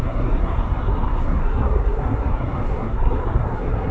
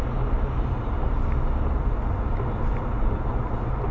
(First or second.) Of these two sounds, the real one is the second